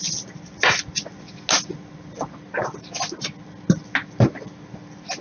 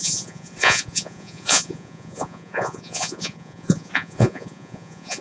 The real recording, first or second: first